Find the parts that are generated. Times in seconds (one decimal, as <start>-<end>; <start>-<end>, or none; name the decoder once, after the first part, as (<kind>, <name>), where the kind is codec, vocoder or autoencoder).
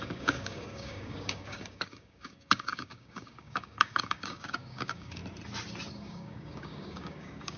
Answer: 0.0-5.2 (codec, DAC); 5.9-7.6